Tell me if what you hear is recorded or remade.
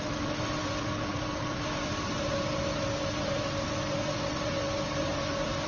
recorded